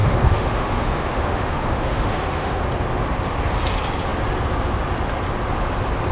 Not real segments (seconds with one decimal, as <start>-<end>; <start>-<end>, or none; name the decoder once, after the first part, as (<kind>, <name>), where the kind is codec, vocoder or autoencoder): 0.0-2.6 (autoencoder, DAC-VAE)